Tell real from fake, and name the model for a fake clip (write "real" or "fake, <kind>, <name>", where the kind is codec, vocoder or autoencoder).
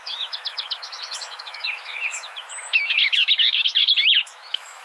fake, autoencoder, DAC-VAE